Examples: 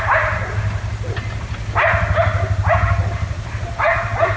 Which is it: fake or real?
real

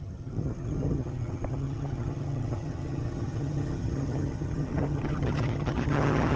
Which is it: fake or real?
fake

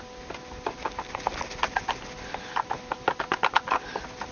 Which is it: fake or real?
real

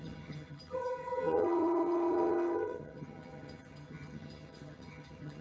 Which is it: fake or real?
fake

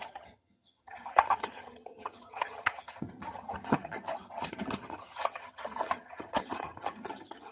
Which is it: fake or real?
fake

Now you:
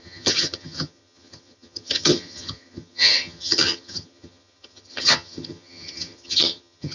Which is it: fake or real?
fake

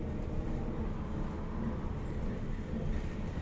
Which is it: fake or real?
real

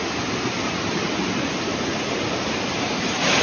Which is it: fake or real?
real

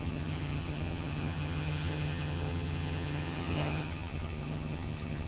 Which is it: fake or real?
fake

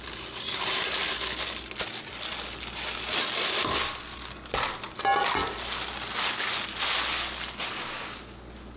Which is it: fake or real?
real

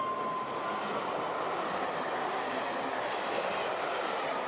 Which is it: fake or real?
real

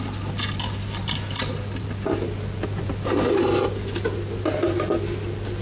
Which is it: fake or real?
real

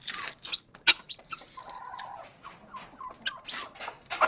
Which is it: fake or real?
real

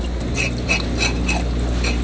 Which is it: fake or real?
real